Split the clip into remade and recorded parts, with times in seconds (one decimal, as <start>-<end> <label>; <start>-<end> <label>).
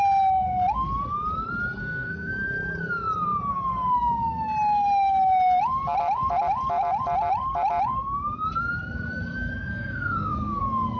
0.0-1.8 recorded; 1.8-2.3 remade; 2.3-9.7 recorded; 9.7-10.6 remade; 10.6-11.0 recorded